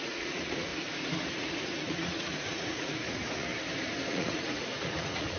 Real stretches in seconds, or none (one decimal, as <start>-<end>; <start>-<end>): 0.7-1.3; 3.5-4.1